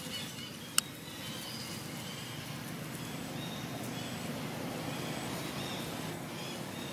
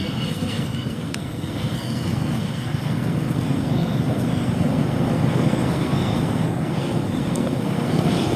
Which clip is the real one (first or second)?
first